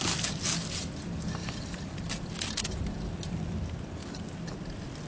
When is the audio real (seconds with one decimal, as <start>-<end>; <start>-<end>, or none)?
none